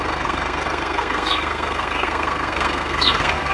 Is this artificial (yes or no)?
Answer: yes